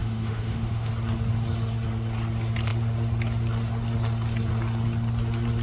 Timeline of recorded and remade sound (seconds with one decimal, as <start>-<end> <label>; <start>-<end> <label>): 0.0-0.9 remade; 0.9-5.6 recorded